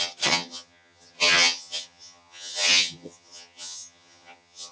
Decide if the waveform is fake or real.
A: fake